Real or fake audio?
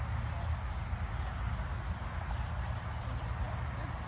real